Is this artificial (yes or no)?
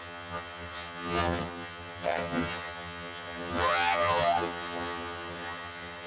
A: yes